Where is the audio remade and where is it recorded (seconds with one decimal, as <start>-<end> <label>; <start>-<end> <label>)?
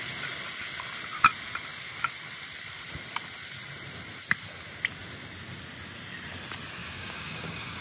0.0-6.8 recorded; 6.8-7.8 remade